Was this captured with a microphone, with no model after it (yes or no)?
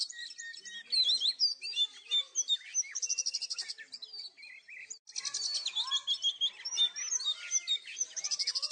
yes